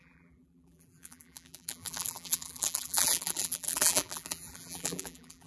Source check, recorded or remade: remade